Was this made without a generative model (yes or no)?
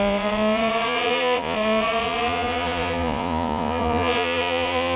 no